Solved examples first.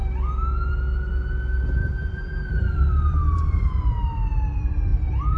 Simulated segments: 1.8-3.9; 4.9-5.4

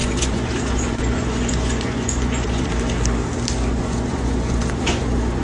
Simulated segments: 0.0-2.7; 3.7-5.4

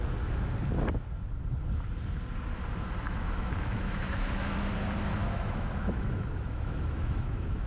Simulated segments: 3.0-4.5; 5.2-7.7